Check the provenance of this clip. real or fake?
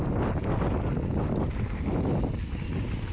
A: real